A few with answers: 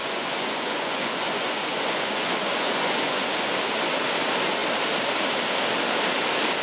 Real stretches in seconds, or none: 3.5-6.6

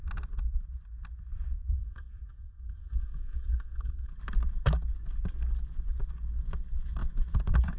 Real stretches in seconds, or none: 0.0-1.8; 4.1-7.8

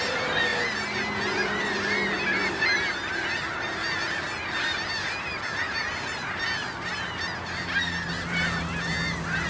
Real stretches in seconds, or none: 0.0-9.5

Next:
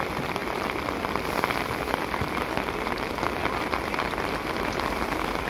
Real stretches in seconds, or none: 0.0-5.5

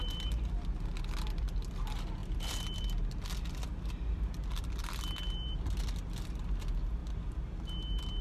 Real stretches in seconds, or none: 0.0-8.2

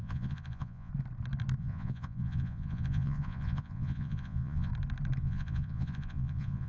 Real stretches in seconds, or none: 0.9-1.6; 4.7-5.2

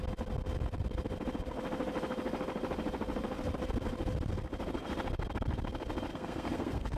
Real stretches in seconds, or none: 0.0-6.1